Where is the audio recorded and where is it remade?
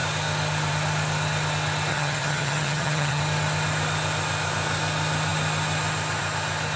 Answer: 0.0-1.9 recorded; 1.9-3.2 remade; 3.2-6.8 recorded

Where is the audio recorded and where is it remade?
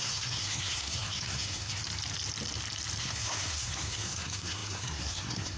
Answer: 0.0-1.8 remade; 1.8-3.0 recorded; 3.0-5.6 remade